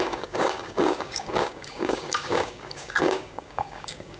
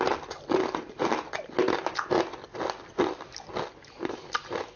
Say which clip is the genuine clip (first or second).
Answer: second